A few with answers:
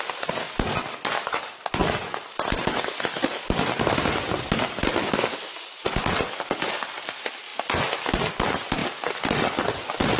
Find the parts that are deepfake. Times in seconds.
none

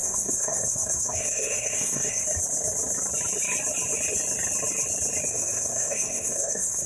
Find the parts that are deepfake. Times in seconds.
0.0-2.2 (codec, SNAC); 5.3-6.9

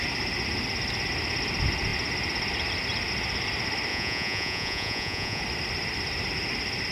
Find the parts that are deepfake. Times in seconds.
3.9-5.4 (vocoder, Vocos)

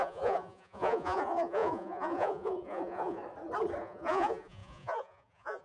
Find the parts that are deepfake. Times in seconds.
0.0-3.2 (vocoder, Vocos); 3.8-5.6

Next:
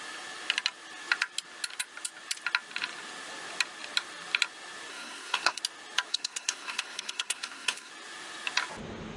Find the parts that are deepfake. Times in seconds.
4.9-5.6 (codec, SNAC); 6.1-7.9

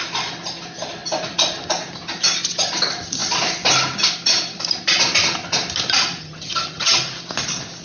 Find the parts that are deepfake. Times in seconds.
6.2-7.0 (vocoder, HiFi-GAN)

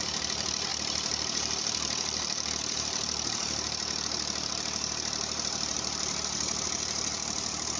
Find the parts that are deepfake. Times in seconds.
0.0-7.8 (vocoder, BigVGAN v2)